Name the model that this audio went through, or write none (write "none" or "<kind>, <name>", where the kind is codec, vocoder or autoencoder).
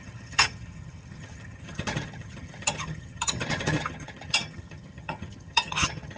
vocoder, HiFi-GAN